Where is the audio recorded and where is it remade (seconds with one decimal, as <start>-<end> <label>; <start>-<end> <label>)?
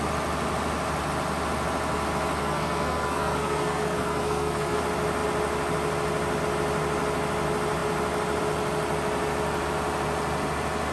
0.0-2.4 recorded; 2.4-4.8 remade; 4.8-10.9 recorded